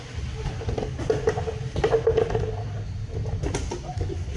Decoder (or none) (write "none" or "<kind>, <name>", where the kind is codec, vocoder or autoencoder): none